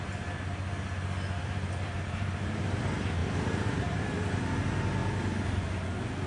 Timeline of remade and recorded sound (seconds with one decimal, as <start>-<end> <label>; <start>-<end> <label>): 0.0-1.4 recorded; 1.4-2.8 remade; 2.8-3.2 recorded; 3.2-4.1 remade; 4.1-6.3 recorded